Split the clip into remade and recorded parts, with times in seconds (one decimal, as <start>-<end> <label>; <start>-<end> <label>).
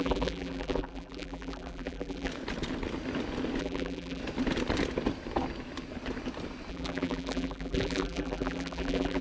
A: 0.0-2.3 remade; 2.3-3.6 recorded; 3.6-4.2 remade; 4.2-6.7 recorded; 6.7-9.2 remade